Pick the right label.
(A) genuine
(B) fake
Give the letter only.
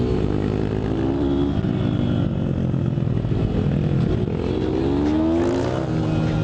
A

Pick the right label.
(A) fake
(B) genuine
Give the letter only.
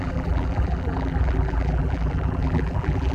A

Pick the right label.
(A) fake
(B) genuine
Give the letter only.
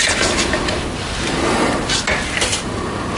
B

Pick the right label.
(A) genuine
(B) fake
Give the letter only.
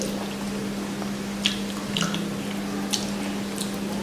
A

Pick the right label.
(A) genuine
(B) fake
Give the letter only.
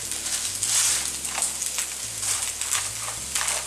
A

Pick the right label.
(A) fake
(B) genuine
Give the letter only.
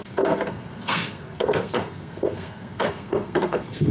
A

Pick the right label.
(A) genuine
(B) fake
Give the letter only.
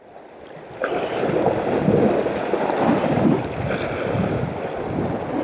A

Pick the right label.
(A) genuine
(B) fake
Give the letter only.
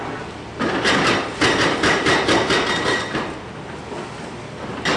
A